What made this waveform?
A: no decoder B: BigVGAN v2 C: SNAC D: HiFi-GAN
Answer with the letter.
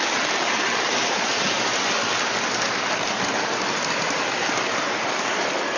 A